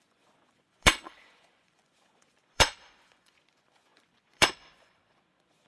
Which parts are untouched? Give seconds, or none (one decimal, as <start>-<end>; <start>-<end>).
none